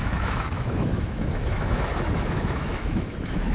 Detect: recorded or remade remade